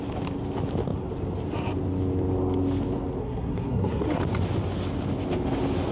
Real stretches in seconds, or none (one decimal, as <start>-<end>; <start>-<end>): 0.0-3.2; 4.2-5.9